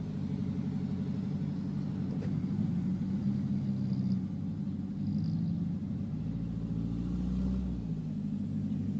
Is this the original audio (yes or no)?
yes